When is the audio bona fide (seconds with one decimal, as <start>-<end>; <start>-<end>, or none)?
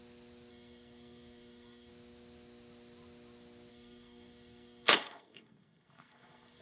0.0-0.5; 1.9-3.7